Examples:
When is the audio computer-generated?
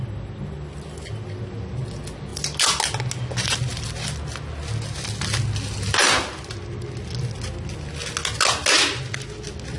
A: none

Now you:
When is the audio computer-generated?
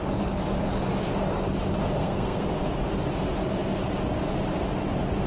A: 2.0-2.5 (codec, SNAC)